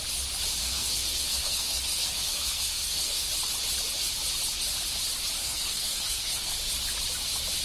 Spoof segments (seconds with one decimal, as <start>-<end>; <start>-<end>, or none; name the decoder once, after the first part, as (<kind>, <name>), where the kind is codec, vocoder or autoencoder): 0.6-3.3 (codec, SNAC); 5.4-6.5